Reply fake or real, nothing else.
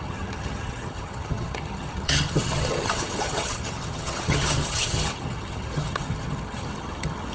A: fake